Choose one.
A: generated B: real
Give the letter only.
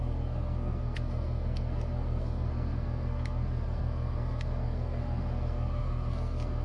A